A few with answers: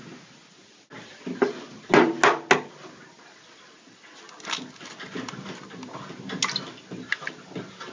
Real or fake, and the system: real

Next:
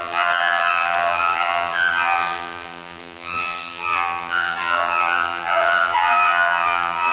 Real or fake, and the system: fake, vocoder, BigVGAN v2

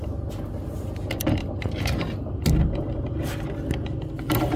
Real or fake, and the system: real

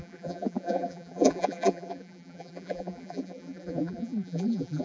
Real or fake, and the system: fake, vocoder, BigVGAN v2